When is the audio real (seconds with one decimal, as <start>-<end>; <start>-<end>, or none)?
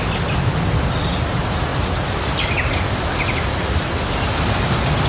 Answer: 0.0-5.1